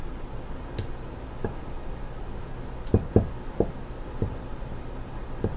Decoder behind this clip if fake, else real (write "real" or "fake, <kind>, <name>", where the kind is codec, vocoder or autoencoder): real